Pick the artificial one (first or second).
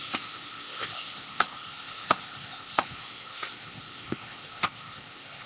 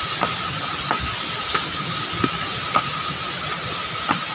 first